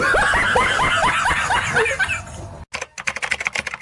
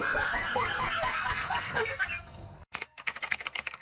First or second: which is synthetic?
second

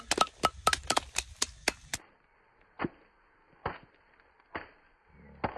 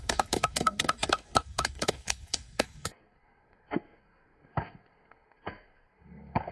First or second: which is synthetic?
second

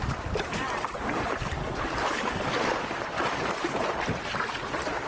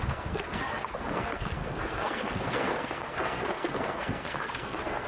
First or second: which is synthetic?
second